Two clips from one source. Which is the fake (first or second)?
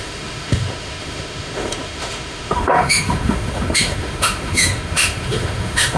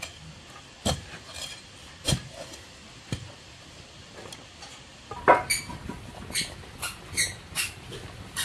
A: first